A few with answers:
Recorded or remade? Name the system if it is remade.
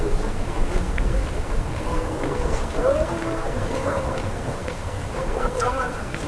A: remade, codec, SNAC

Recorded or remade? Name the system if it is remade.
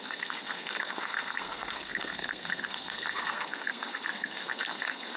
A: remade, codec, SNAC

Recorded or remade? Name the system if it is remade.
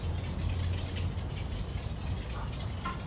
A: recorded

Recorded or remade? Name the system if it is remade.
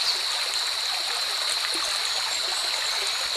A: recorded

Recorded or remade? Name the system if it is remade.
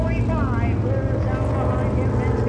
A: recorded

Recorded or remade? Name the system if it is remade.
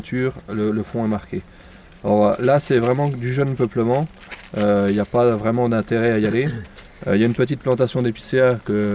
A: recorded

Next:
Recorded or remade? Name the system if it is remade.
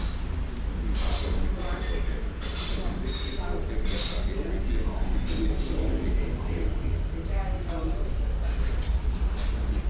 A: recorded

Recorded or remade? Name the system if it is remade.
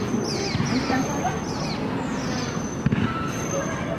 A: recorded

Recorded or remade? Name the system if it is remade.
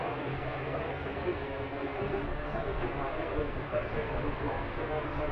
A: remade, codec, SNAC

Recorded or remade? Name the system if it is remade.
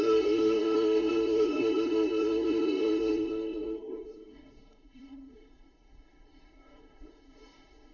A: remade, codec, SNAC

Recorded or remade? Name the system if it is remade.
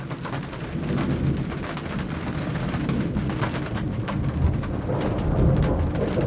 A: recorded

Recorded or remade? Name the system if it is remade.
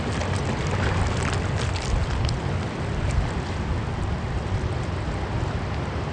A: recorded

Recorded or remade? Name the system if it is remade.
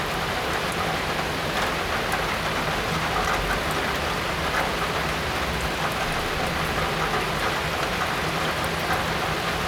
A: recorded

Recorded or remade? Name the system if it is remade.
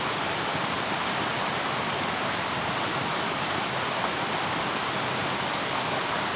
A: recorded